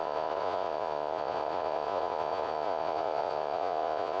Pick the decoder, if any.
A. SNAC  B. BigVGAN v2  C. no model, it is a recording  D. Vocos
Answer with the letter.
D